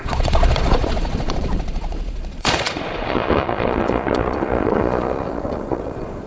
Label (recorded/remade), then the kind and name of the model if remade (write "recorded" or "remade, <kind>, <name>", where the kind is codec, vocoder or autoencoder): remade, vocoder, Vocos